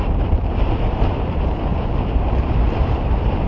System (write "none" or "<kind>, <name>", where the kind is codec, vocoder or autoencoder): vocoder, BigVGAN v2